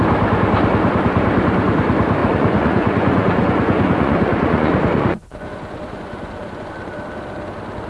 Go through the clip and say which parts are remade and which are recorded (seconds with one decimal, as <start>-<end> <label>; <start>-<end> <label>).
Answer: 0.0-2.2 recorded; 2.2-6.7 remade; 6.7-7.9 recorded